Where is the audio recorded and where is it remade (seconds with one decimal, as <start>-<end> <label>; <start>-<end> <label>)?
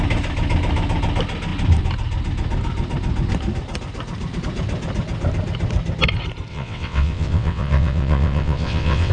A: 0.0-6.5 recorded; 6.5-9.1 remade